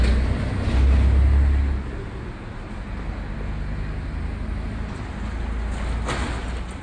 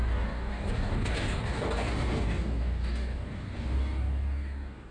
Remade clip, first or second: second